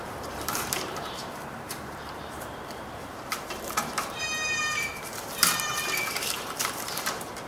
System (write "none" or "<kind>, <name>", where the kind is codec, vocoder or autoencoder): vocoder, BigVGAN v2